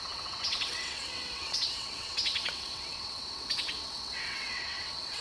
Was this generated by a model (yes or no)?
yes